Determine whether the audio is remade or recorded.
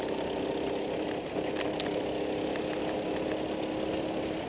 recorded